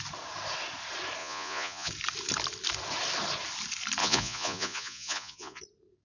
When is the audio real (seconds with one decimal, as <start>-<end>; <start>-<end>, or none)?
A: 0.0-1.2; 1.9-4.0; 5.6-6.0